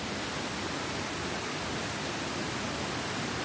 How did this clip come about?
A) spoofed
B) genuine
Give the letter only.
B